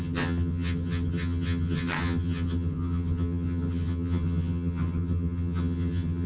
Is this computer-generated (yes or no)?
yes